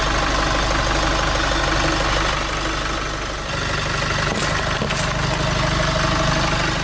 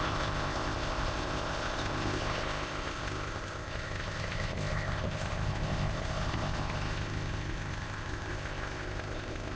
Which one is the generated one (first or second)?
second